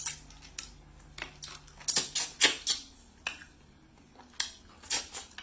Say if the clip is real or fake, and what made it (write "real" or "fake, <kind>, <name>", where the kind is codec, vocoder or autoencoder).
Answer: real